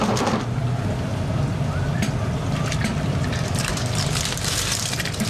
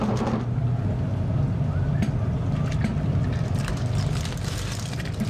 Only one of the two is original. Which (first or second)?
second